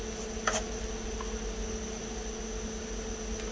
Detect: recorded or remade recorded